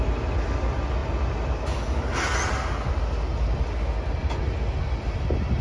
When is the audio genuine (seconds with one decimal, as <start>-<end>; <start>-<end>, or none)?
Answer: 0.0-5.6